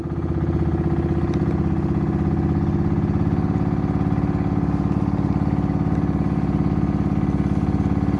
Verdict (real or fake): real